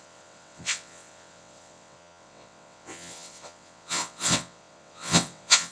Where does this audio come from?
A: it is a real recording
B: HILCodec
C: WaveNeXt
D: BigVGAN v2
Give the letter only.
C